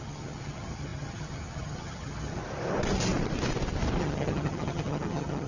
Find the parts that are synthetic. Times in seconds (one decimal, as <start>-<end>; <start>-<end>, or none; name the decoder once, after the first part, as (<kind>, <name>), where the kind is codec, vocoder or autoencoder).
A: 0.0-2.4 (vocoder, HiFi-GAN); 4.0-5.5